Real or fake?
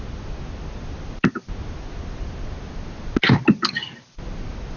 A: real